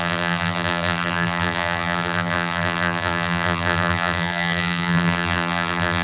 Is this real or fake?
fake